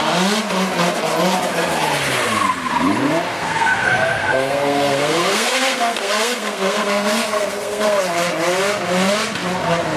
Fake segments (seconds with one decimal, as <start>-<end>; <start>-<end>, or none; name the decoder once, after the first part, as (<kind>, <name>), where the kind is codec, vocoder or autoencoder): 3.3-8.0 (codec, SNAC)

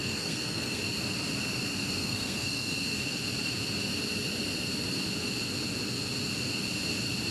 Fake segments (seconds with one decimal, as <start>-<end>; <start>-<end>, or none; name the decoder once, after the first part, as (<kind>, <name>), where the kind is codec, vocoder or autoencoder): 0.0-0.8 (codec, SNAC); 2.0-3.0

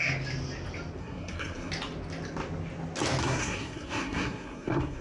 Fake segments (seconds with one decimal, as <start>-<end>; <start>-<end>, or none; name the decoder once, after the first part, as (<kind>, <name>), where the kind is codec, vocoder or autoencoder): 1.0-1.7 (codec, SNAC); 3.2-5.0

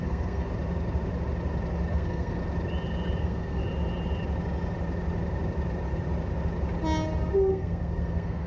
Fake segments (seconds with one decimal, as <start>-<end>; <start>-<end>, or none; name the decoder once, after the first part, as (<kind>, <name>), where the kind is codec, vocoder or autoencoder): 0.0-0.5 (codec, SNAC); 1.9-2.4; 3.2-3.6; 7.5-8.5

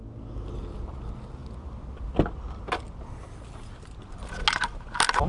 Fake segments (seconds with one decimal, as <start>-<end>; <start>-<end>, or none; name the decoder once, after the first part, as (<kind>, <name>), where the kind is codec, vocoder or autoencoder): none